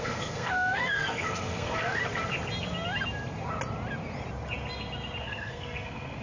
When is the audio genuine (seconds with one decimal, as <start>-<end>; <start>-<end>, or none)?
2.0-5.2